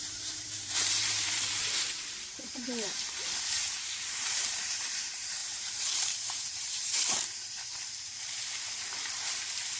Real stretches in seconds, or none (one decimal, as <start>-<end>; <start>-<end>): none

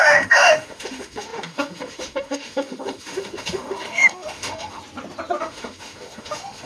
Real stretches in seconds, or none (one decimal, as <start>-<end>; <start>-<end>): 4.8-5.4

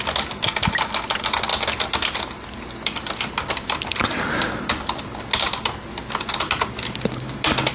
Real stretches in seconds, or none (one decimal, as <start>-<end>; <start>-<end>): 0.0-7.7

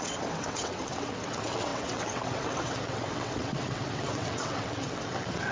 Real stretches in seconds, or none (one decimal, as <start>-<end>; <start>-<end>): none

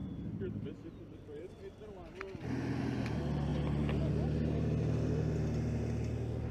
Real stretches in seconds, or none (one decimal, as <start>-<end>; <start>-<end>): 1.5-6.5

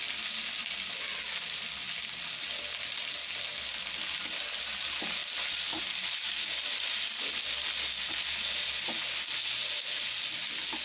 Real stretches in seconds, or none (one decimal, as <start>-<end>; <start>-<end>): 0.0-10.8